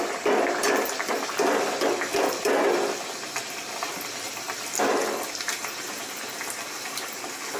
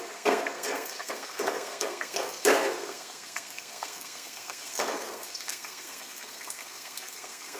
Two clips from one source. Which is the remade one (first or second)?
second